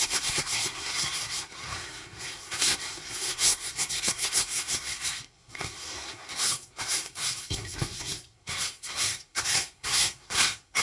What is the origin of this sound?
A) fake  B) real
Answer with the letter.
A